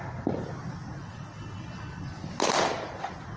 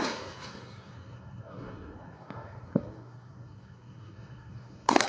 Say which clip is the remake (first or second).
second